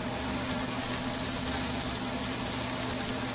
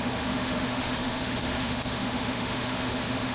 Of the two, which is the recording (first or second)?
first